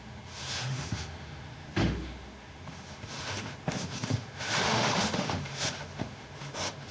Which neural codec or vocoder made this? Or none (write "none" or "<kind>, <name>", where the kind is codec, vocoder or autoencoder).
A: autoencoder, DAC-VAE